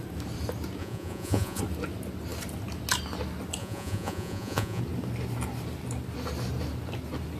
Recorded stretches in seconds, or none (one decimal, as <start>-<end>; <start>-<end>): 0.0-0.8; 1.6-3.6; 4.8-7.4